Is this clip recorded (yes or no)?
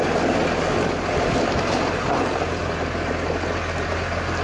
yes